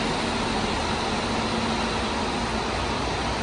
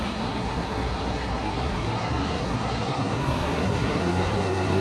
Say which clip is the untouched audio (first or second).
first